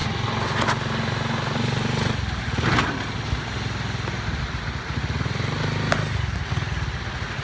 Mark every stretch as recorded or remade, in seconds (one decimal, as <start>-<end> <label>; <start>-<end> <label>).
0.0-7.4 recorded